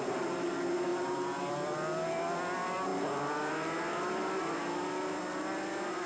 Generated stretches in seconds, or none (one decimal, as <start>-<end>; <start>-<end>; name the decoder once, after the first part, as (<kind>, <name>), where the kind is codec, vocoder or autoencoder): none